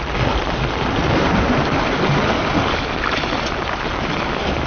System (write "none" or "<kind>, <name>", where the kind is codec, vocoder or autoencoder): none